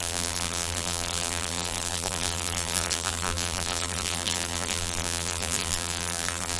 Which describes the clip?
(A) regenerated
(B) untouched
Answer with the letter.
A